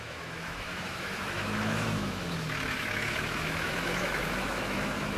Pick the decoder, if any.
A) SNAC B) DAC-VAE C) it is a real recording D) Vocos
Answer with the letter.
B